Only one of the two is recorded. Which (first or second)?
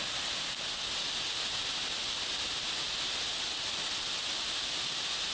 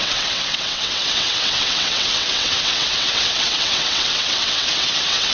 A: first